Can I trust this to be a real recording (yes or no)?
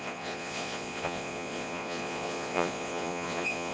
no